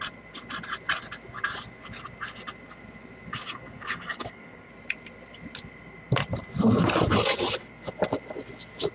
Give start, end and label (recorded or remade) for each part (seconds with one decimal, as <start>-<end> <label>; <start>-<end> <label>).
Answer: 0.0-3.3 recorded; 3.3-4.7 remade; 4.7-8.9 recorded